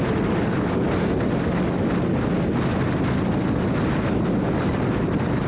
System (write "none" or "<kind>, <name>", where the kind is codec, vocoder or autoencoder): none